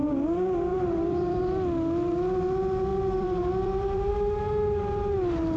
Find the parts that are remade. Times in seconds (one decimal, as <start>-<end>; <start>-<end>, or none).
0.7-1.4; 2.9-4.1